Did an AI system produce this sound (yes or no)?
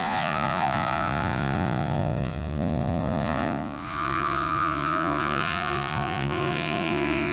yes